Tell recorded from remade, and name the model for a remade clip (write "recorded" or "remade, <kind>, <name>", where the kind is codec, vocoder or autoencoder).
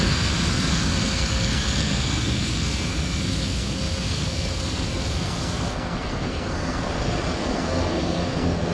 remade, codec, SNAC